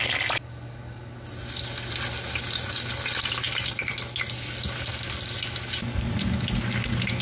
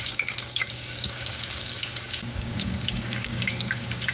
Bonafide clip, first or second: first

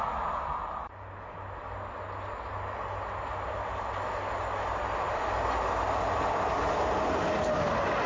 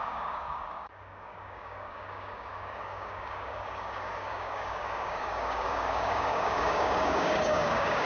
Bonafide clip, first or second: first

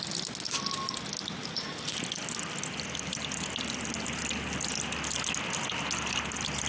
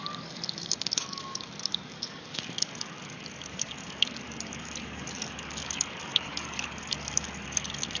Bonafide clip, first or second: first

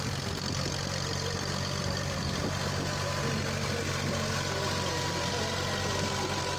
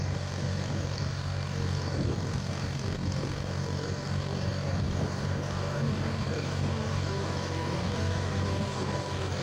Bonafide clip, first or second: first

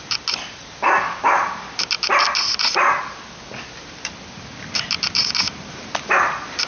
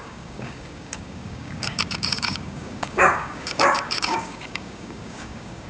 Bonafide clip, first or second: first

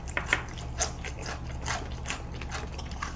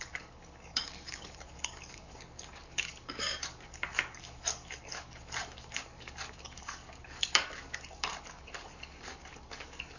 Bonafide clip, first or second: first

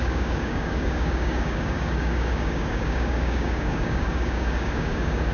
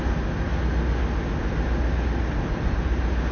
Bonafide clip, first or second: second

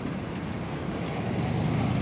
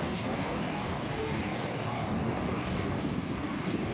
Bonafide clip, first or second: first